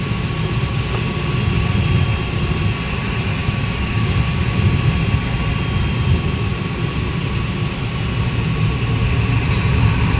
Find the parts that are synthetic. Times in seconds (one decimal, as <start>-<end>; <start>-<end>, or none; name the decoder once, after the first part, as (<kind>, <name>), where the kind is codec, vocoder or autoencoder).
3.4-4.1 (codec, DAC)